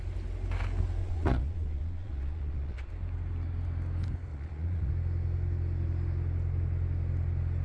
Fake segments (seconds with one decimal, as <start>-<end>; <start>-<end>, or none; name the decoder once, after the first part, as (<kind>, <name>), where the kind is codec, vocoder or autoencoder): 1.0-2.9 (vocoder, Vocos); 4.3-4.9